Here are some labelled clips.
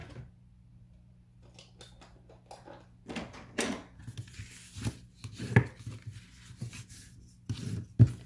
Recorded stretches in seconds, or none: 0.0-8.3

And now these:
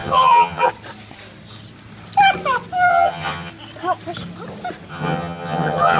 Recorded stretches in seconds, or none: 0.7-2.9; 3.5-4.9

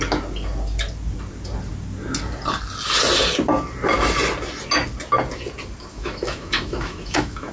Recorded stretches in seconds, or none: 0.0-5.9

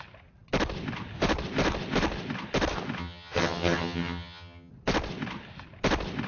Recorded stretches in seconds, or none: 0.0-3.0; 4.7-6.3

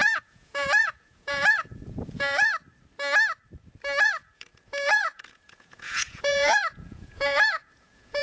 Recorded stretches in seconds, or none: 2.5-4.0

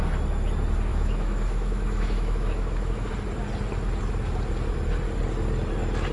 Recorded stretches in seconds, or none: 0.0-0.9; 3.1-6.1

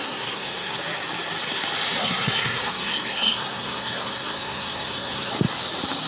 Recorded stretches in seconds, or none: 0.8-2.0; 5.3-6.1